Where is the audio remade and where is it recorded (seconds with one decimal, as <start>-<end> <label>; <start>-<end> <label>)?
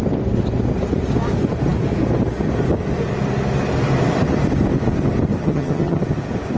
0.0-5.4 recorded; 5.4-6.0 remade; 6.0-6.6 recorded